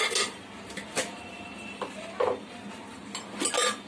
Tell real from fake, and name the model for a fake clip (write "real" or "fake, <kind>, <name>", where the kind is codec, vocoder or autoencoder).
real